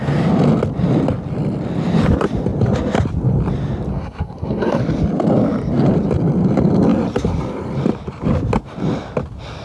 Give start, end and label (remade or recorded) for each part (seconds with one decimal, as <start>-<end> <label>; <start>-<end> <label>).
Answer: 0.0-3.9 recorded; 3.9-4.8 remade; 4.8-9.6 recorded